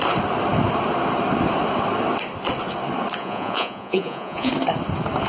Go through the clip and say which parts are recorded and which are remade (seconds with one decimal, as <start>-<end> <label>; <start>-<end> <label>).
0.0-3.2 recorded; 3.2-4.5 remade; 4.5-5.3 recorded